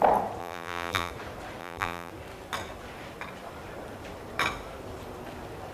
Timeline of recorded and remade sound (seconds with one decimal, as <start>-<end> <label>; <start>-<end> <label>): 0.0-0.4 recorded; 0.4-1.1 remade; 1.1-1.6 recorded; 1.6-2.1 remade; 2.1-5.7 recorded